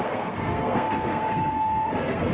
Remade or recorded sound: remade